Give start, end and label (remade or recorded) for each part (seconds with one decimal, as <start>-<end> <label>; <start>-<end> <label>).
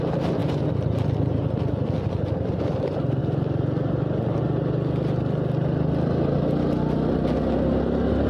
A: 0.0-0.4 recorded; 0.4-2.6 remade; 2.6-3.2 recorded; 3.2-4.4 remade; 4.4-8.3 recorded